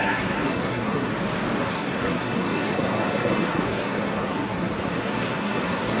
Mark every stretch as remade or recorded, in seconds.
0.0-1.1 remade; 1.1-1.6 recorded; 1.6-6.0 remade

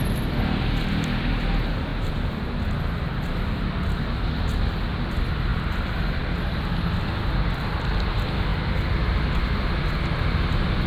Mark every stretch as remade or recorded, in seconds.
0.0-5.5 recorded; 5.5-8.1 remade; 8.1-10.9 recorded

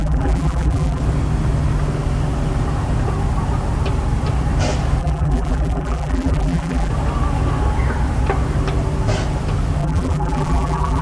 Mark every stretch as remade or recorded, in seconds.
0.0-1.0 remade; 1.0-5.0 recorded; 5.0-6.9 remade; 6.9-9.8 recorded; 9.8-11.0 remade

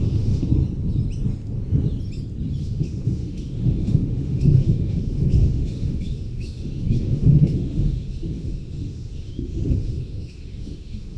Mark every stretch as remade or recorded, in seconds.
0.0-0.5 remade; 0.5-2.6 recorded; 2.6-11.2 remade